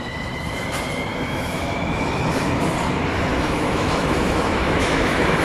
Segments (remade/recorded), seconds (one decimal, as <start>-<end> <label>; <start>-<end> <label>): 0.0-1.1 recorded; 1.1-2.2 remade; 2.2-3.3 recorded; 3.3-5.4 remade